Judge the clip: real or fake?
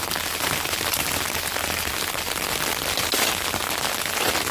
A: real